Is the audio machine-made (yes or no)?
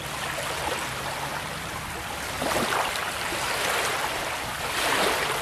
no